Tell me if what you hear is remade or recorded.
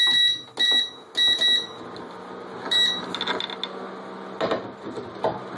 recorded